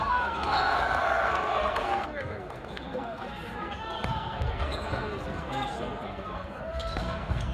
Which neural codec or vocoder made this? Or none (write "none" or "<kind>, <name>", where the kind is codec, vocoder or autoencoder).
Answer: codec, SNAC